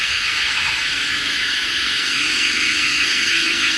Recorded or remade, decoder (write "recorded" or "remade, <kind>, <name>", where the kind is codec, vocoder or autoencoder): remade, codec, SNAC